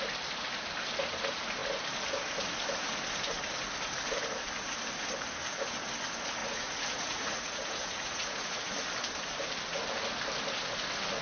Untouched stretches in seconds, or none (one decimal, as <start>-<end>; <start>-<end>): 0.0-6.4; 8.7-11.2